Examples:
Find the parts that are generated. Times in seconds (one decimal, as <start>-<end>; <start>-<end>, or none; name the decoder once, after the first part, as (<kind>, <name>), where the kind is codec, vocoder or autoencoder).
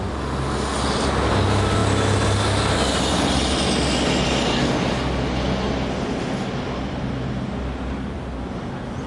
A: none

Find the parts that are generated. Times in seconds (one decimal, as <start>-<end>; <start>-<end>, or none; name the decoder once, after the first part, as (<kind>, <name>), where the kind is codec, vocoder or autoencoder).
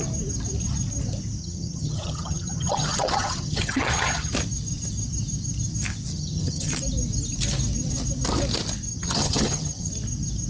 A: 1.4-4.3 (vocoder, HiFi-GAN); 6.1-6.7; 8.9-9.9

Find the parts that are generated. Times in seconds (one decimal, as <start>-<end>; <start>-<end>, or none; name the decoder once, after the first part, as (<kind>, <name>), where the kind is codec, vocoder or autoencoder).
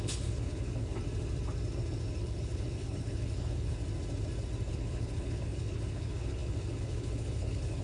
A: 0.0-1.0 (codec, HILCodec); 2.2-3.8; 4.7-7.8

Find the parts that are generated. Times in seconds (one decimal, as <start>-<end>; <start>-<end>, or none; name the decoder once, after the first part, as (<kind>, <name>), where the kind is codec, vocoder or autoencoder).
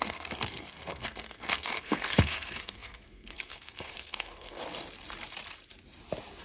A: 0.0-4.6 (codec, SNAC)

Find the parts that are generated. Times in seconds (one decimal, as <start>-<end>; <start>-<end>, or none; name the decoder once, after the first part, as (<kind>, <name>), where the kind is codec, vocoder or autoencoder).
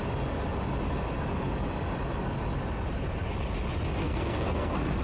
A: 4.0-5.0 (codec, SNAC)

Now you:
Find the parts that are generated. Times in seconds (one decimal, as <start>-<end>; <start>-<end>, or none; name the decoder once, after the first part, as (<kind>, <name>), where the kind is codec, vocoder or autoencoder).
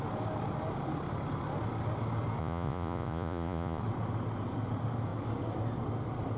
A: 2.4-3.8 (vocoder, Vocos)